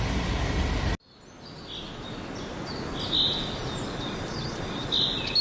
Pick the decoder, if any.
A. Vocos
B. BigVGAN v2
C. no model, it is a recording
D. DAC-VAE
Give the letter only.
C